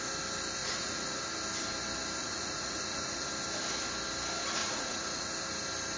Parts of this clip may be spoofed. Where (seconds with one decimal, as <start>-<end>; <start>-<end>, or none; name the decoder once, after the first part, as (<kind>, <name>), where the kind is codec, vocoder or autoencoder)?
0.6-1.2 (vocoder, Vocos); 2.2-3.3; 4.6-5.3